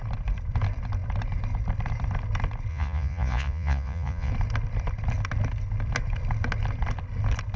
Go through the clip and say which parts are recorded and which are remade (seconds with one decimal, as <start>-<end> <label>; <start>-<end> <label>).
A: 0.0-2.7 recorded; 2.7-4.3 remade; 4.3-7.6 recorded